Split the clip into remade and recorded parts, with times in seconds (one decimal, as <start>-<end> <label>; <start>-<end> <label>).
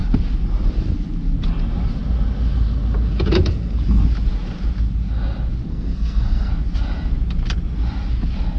0.0-5.7 recorded; 5.7-6.5 remade; 6.5-8.6 recorded